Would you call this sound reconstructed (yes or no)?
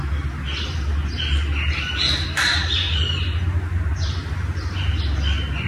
no